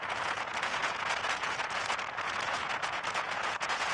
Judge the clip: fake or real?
fake